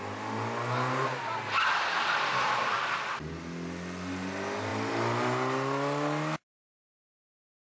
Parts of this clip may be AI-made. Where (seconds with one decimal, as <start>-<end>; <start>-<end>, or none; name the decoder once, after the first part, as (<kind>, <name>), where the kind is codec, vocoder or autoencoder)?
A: none